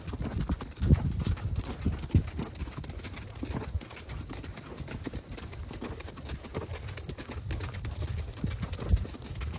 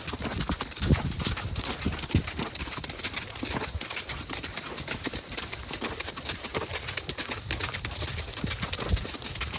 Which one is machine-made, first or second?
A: second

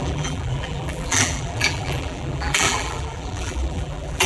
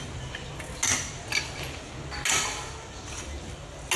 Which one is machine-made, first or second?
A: first